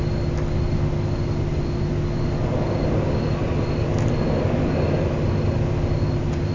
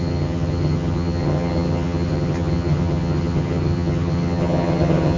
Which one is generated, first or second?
second